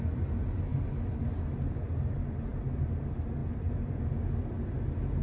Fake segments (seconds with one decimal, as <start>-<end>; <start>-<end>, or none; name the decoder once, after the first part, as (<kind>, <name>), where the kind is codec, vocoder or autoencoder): 3.4-4.0 (vocoder, BigVGAN v2)